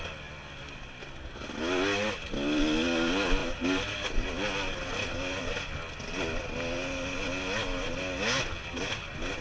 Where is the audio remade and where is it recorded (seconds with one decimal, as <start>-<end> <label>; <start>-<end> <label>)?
0.0-9.4 recorded